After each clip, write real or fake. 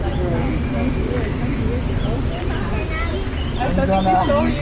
real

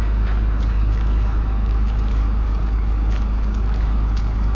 fake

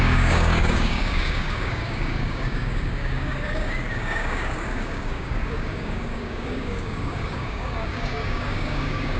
fake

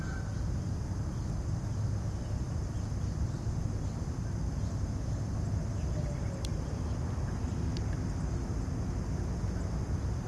real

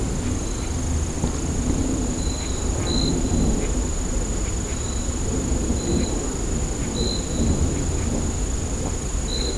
real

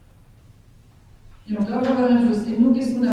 real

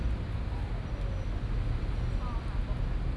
real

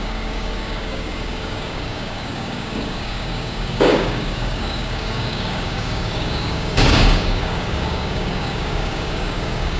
fake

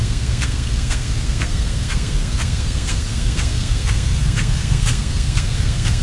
fake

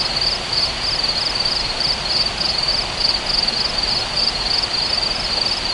real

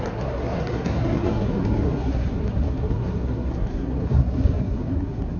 fake